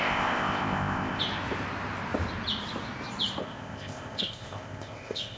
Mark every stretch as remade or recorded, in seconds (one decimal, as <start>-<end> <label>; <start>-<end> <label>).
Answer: 0.0-1.2 remade; 1.2-3.4 recorded; 3.4-5.4 remade

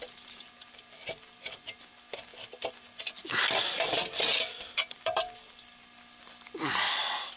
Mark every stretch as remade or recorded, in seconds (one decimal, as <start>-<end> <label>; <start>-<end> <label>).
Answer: 0.0-6.0 remade; 6.0-6.7 recorded; 6.7-7.4 remade

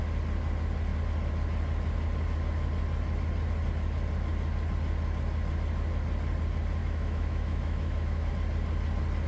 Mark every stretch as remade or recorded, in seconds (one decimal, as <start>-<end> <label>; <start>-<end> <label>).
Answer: 0.0-6.8 recorded; 6.8-8.3 remade; 8.3-9.3 recorded

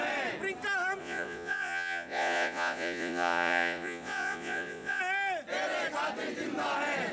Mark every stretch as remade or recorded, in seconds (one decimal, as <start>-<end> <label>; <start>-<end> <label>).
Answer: 0.0-1.0 recorded; 1.0-5.0 remade; 5.0-7.1 recorded

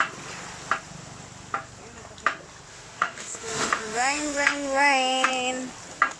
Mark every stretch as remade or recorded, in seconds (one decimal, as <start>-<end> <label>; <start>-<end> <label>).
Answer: 0.0-2.7 recorded; 2.7-5.3 remade; 5.3-6.2 recorded